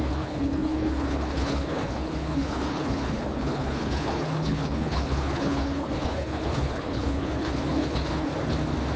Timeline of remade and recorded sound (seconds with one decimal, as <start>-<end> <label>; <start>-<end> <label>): 0.0-8.3 remade; 8.3-9.0 recorded